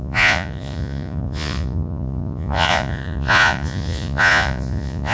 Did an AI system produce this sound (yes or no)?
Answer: yes